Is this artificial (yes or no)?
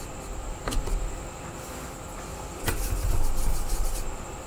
no